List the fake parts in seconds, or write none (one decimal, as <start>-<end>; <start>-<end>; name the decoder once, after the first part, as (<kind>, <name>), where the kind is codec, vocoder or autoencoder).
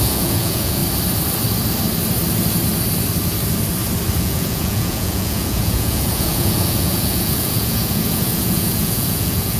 0.0-0.8 (vocoder, Vocos); 4.2-9.6